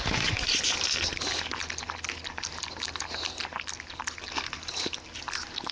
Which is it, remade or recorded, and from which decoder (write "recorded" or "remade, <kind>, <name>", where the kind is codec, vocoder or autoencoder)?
recorded